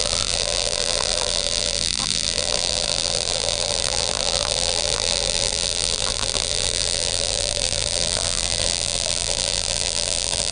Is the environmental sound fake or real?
fake